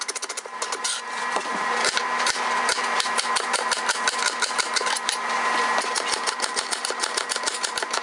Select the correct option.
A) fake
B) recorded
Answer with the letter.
A